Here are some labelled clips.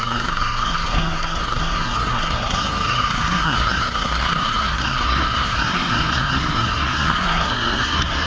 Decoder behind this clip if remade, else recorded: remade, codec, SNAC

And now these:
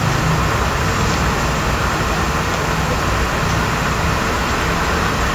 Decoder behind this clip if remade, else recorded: recorded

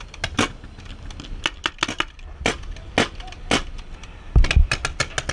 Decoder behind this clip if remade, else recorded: recorded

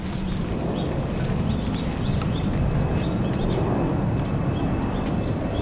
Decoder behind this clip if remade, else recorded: recorded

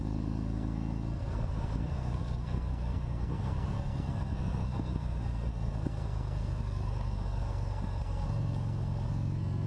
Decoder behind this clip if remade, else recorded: remade, codec, SNAC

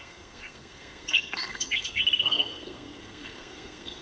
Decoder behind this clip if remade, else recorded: remade, codec, SNAC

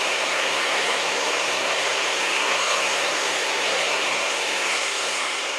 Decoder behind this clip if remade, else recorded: remade, codec, SNAC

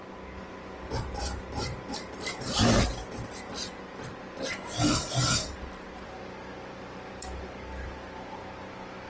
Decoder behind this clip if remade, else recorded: recorded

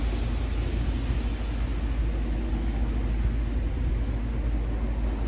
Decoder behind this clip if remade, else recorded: recorded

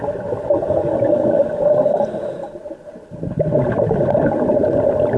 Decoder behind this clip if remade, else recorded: recorded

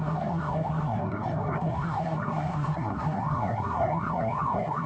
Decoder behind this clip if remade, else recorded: remade, codec, SNAC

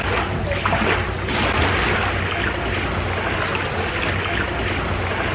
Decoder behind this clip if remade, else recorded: recorded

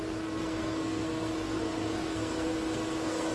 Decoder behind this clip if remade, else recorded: remade, codec, SNAC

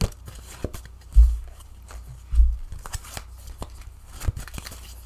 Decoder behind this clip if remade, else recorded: recorded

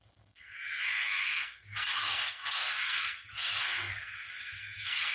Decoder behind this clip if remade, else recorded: remade, codec, SNAC